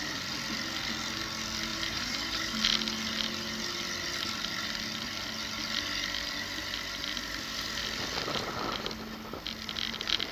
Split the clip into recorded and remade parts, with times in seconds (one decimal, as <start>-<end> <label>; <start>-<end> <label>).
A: 0.0-1.7 recorded; 1.7-2.6 remade; 2.6-10.3 recorded